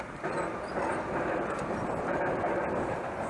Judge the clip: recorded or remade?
recorded